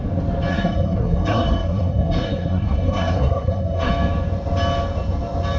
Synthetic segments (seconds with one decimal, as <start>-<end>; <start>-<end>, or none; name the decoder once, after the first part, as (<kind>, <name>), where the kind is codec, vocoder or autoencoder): 0.5-3.9 (codec, SNAC)